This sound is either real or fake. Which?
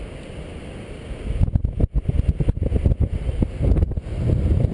real